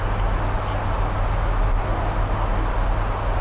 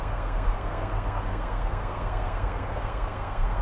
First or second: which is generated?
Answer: second